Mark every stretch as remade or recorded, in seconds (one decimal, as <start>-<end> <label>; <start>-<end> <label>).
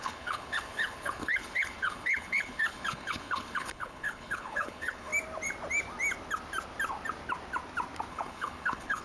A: 0.0-5.1 remade; 5.1-8.1 recorded; 8.1-9.0 remade